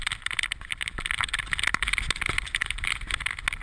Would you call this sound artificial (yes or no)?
no